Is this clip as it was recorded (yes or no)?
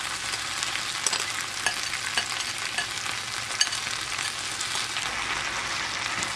yes